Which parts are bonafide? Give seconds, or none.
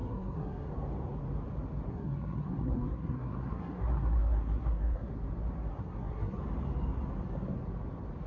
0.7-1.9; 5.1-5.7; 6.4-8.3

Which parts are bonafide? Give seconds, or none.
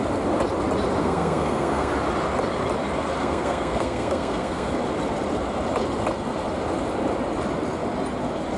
0.0-1.0; 1.9-3.2; 4.7-8.6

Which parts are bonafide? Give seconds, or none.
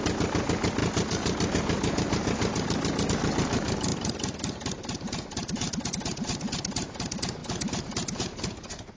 0.0-9.0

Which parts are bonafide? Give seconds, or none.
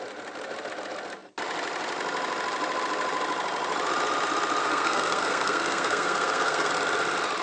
0.0-4.6; 6.7-7.4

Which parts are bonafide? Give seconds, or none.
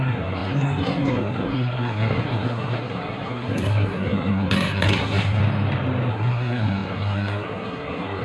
5.4-6.1